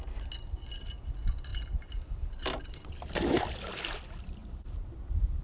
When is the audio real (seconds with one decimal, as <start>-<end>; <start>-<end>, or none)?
0.0-4.4